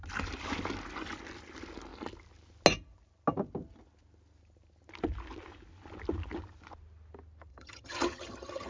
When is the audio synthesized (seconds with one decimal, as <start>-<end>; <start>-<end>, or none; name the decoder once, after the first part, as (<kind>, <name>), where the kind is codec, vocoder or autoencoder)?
7.5-8.7 (vocoder, HiFi-GAN)